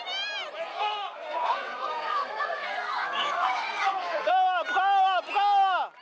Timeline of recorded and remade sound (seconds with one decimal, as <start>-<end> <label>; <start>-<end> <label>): 0.0-0.7 recorded; 0.7-4.3 remade; 4.3-6.0 recorded